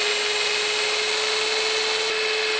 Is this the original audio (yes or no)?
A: yes